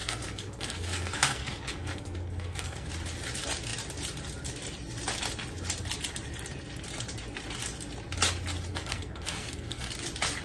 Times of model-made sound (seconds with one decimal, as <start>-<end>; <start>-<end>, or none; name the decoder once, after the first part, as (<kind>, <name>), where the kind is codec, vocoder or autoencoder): 0.0-2.9 (codec, SNAC); 8.7-9.9